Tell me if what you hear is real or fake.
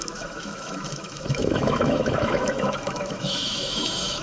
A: fake